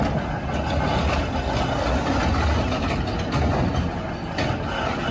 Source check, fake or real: real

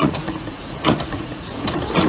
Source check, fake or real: fake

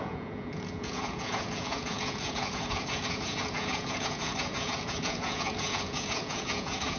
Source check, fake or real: fake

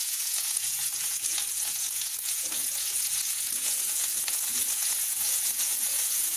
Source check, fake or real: fake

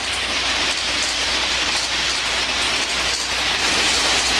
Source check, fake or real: real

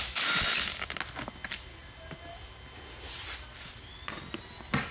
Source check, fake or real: real